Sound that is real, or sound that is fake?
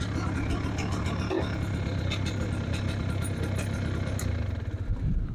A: real